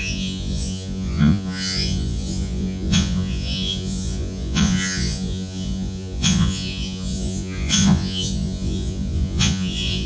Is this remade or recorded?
remade